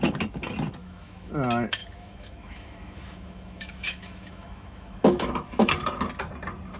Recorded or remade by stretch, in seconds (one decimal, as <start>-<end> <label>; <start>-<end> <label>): 0.0-0.8 recorded; 0.8-1.3 remade; 1.3-1.8 recorded; 1.8-5.7 remade; 5.7-6.8 recorded